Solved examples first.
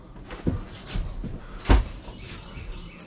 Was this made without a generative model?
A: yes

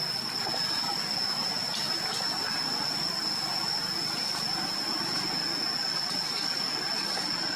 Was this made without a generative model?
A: yes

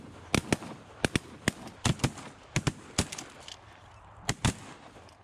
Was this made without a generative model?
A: yes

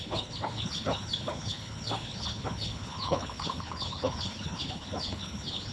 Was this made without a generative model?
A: no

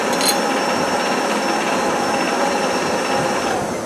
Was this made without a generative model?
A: yes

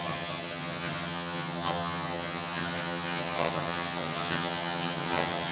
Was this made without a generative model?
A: no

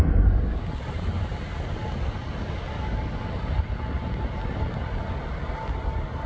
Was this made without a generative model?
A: yes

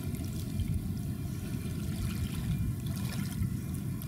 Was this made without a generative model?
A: yes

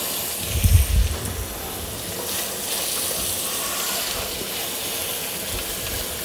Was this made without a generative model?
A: yes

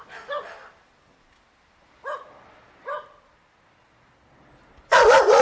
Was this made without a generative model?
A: yes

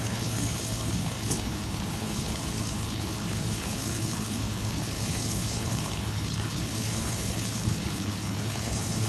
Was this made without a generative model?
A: no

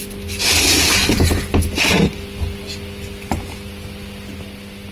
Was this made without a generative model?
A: yes